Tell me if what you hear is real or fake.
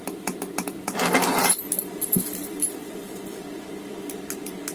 real